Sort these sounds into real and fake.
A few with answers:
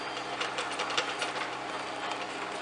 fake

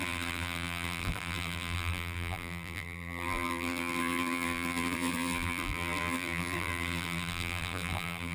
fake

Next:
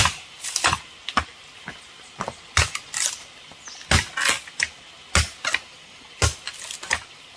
real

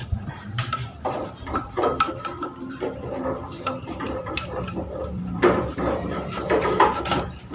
fake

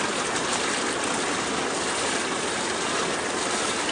fake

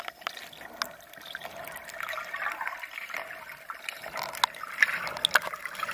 real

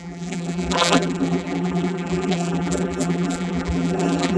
fake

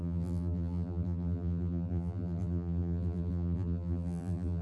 fake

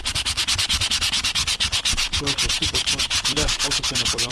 fake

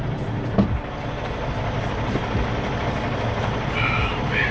real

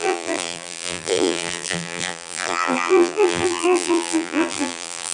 fake